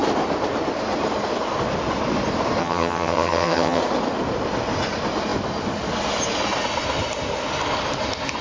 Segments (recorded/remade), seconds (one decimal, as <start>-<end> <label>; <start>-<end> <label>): 0.0-2.6 recorded; 2.6-3.8 remade; 3.8-8.4 recorded